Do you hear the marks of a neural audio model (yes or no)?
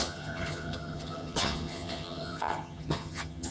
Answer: yes